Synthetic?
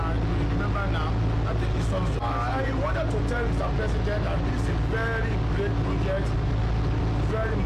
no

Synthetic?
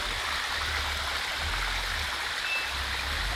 no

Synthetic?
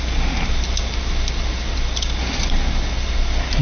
no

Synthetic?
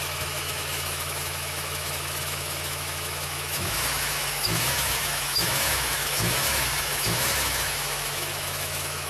yes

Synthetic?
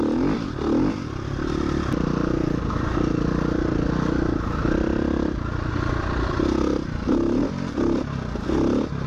no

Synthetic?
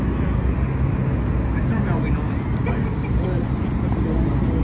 no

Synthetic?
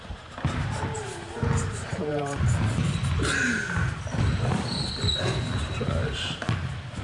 no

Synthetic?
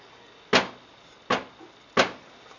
no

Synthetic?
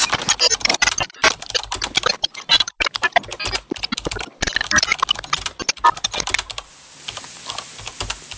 no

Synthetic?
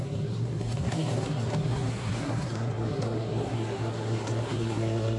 yes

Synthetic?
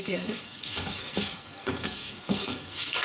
yes